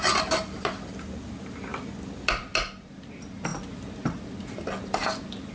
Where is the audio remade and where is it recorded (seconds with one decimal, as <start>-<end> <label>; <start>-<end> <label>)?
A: 0.0-5.5 recorded